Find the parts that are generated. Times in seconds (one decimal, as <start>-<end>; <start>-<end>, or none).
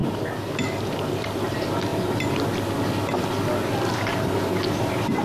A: none